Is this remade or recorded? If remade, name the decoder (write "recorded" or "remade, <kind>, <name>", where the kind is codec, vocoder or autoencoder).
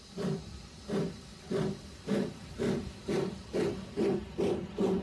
recorded